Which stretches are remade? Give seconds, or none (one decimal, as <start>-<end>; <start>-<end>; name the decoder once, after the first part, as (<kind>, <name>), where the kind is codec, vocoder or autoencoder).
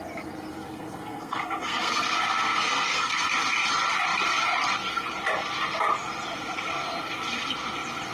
0.5-3.3 (codec, SNAC)